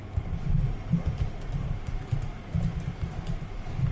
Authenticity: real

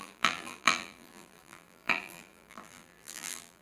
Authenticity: fake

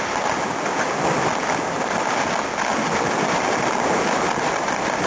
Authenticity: real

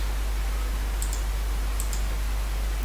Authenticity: real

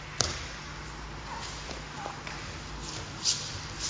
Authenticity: fake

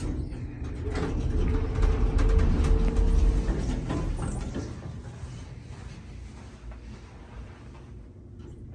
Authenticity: real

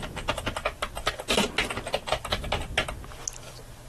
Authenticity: real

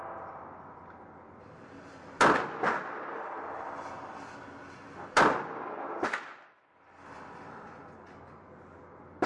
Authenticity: real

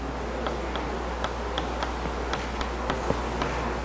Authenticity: real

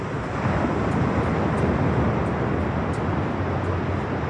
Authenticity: real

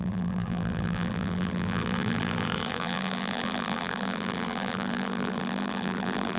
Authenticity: fake